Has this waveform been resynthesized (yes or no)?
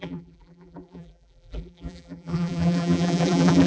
yes